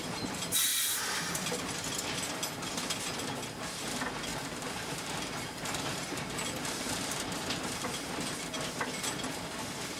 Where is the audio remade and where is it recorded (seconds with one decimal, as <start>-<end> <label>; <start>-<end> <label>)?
0.0-0.7 recorded; 0.7-1.7 remade; 1.7-4.3 recorded; 4.3-8.1 remade; 8.1-10.0 recorded